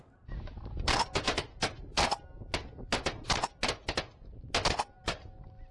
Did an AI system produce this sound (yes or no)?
no